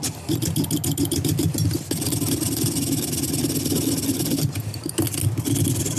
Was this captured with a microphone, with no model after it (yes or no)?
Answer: yes